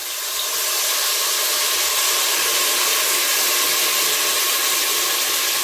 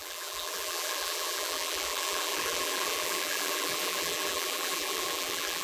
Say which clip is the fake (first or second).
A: second